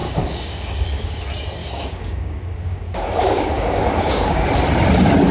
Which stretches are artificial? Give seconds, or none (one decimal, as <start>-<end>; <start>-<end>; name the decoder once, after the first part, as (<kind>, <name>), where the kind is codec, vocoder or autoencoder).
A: 0.0-1.2 (codec, DAC); 1.6-4.5